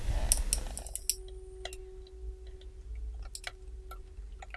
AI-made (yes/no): no